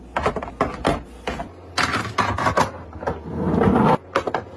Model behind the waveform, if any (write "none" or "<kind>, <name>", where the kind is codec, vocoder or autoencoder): none